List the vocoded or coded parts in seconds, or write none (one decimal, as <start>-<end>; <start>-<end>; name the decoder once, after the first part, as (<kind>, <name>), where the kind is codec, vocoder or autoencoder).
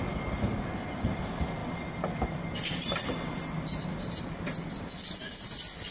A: none